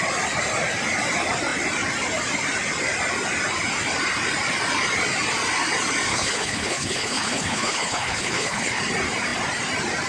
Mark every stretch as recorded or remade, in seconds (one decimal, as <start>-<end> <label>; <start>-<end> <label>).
0.0-6.1 recorded; 6.1-8.8 remade; 8.8-10.1 recorded